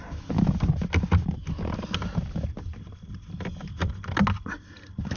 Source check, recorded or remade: recorded